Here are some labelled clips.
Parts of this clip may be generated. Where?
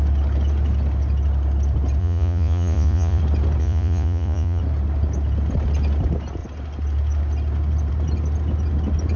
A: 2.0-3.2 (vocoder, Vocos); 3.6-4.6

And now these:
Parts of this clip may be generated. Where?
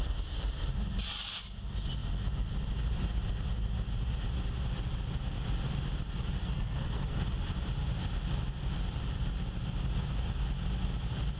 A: 6.4-7.2 (codec, SNAC)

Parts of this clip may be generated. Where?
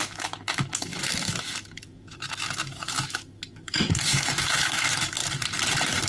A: 0.0-5.2 (autoencoder, DAC-VAE)